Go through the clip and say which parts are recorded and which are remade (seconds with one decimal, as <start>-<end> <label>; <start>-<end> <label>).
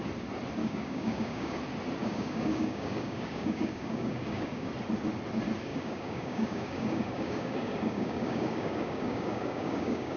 0.0-0.6 recorded; 0.6-1.6 remade; 1.6-2.0 recorded; 2.0-4.7 remade; 4.7-5.7 recorded; 5.7-10.2 remade